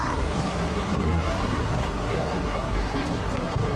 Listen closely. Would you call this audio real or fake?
fake